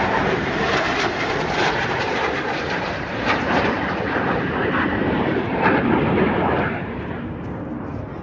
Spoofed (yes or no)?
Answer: yes